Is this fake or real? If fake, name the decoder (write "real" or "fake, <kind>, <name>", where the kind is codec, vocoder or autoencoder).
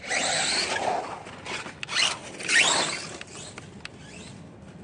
real